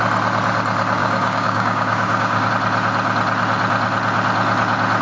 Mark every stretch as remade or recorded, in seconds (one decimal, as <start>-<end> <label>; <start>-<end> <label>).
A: 0.0-1.0 recorded; 1.0-2.5 remade; 2.5-5.0 recorded